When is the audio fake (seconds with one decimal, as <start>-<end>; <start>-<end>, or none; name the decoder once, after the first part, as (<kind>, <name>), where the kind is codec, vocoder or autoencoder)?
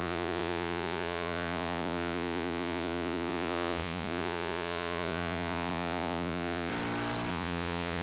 0.0-6.7 (vocoder, Vocos); 7.3-8.0